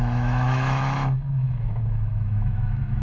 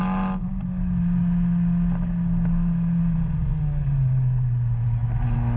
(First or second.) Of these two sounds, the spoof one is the first